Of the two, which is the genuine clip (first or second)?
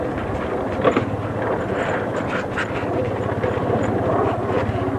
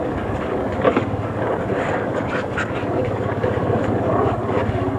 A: first